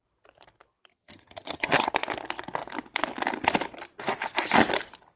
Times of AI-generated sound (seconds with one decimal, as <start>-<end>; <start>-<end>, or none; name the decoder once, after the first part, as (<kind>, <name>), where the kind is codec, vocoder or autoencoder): 0.9-1.9 (vocoder, HiFi-GAN)